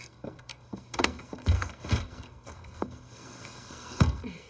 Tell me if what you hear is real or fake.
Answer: fake